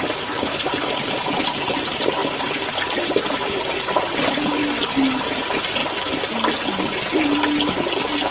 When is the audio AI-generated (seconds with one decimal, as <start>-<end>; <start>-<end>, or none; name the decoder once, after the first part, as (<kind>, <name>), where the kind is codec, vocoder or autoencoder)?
0.0-2.2 (vocoder, BigVGAN v2); 2.8-4.6; 5.3-5.8